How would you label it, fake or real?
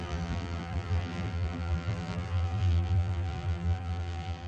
fake